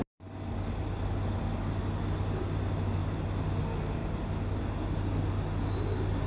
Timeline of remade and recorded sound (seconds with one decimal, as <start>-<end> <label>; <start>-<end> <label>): 0.0-6.3 recorded